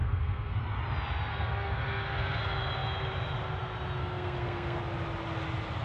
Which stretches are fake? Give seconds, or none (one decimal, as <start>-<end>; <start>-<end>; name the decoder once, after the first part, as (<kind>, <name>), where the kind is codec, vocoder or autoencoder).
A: 0.0-0.6 (codec, SNAC); 1.3-2.4; 4.0-4.8